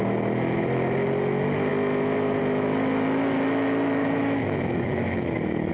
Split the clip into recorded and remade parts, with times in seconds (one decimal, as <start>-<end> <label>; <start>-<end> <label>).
0.0-4.0 recorded; 4.0-5.7 remade